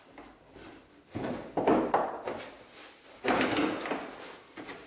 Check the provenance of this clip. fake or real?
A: real